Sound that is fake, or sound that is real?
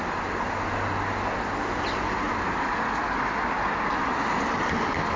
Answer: real